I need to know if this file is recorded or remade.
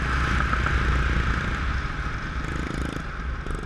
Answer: recorded